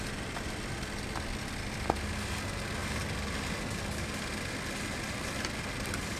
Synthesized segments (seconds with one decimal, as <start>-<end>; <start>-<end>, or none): none